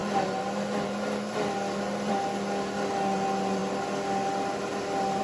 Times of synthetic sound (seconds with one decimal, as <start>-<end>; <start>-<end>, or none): none